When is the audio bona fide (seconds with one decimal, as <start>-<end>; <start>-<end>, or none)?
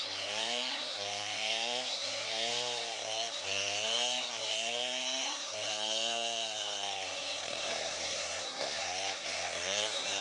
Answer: none